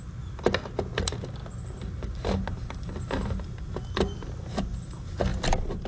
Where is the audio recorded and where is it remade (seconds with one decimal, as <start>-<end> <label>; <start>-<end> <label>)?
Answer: 0.0-5.3 recorded; 5.3-5.9 remade